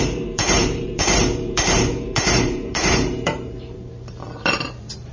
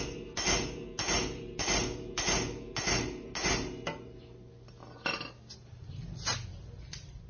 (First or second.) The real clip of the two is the second